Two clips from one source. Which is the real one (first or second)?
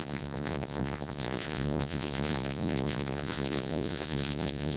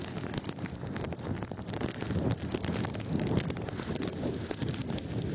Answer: second